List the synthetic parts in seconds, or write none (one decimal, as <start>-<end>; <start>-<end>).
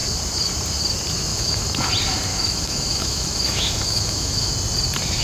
1.3-1.9; 2.3-4.5